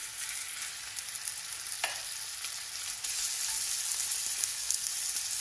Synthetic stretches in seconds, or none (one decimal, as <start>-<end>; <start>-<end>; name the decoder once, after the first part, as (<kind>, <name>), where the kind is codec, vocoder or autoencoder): 4.4-4.9 (codec, SNAC)